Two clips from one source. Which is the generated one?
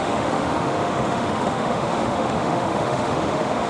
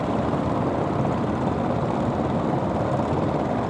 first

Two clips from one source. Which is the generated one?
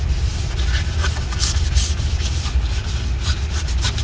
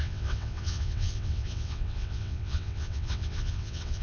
second